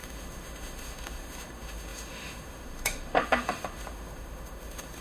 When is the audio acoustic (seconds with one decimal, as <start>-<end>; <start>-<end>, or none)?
none